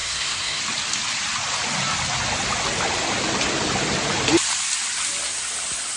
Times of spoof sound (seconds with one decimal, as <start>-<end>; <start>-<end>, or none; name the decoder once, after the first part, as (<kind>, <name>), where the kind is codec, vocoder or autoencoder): 0.0-0.6 (codec, SNAC)